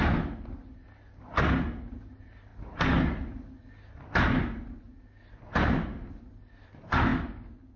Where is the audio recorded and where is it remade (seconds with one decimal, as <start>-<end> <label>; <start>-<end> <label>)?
0.0-7.8 recorded